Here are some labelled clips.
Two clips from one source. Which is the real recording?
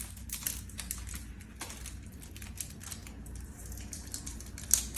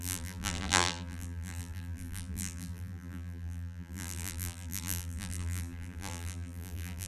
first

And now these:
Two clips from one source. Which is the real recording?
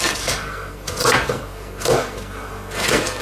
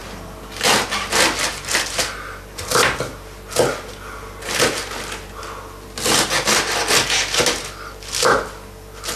second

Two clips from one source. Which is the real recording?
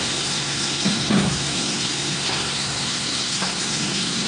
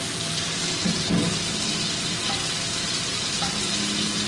second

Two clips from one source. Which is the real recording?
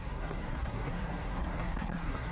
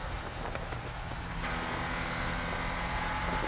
second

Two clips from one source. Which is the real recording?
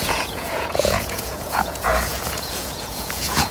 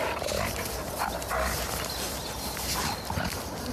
second